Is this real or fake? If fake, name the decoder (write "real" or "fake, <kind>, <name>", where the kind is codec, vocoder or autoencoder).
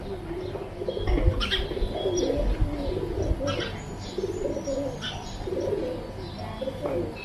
real